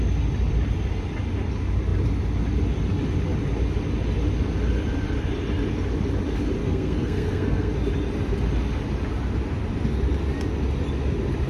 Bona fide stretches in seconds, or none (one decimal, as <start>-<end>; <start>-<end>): 0.0-6.6; 7.7-11.5